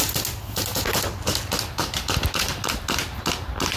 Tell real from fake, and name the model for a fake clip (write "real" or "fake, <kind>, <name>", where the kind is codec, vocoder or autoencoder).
real